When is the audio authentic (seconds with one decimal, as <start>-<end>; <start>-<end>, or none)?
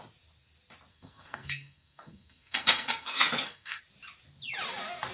0.0-0.9; 3.8-5.1